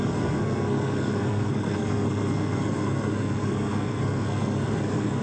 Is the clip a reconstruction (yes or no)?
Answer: yes